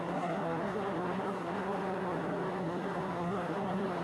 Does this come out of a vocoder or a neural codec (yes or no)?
yes